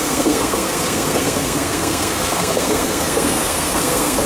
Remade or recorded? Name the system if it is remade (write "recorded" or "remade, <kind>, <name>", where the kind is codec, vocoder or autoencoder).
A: remade, codec, SNAC